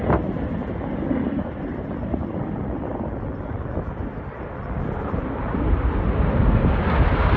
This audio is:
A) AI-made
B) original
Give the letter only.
B